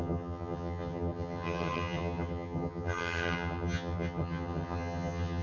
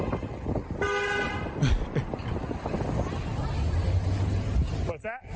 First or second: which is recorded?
second